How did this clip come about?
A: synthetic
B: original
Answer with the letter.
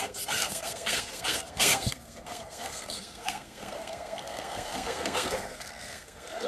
A